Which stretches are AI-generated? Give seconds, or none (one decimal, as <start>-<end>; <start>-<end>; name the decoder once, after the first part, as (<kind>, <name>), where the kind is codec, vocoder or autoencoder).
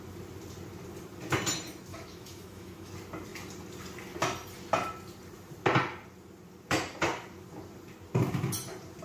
1.9-2.9 (autoencoder, DAC-VAE)